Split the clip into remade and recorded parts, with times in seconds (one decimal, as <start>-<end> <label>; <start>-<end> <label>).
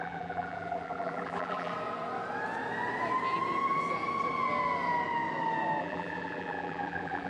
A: 0.0-1.7 remade; 1.7-5.8 recorded; 5.8-7.3 remade